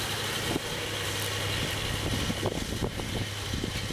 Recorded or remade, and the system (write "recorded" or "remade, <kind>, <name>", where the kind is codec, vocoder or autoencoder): recorded